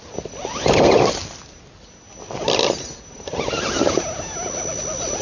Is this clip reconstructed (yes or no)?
no